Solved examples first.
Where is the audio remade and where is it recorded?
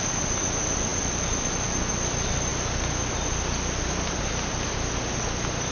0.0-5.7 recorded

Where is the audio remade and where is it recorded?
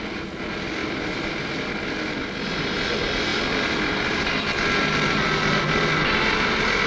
0.0-0.8 recorded; 0.8-2.7 remade; 2.7-3.3 recorded; 3.3-4.3 remade; 4.3-6.9 recorded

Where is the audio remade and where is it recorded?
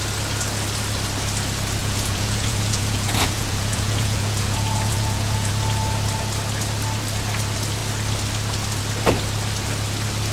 0.0-1.8 recorded; 1.8-5.5 remade; 5.5-10.3 recorded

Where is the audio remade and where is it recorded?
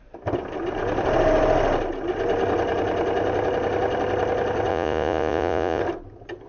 0.0-4.7 recorded; 4.7-5.8 remade; 5.8-6.5 recorded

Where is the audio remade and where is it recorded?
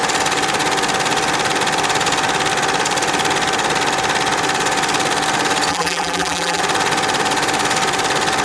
0.0-5.7 recorded; 5.7-6.6 remade; 6.6-8.4 recorded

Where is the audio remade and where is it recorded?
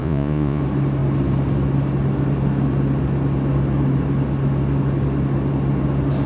0.0-0.6 remade; 0.6-6.3 recorded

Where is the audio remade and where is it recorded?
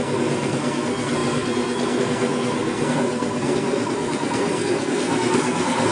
0.0-5.9 remade